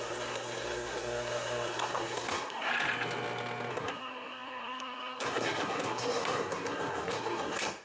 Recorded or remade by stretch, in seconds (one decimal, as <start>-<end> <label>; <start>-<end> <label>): 0.0-2.7 remade; 2.7-3.7 recorded; 3.7-7.8 remade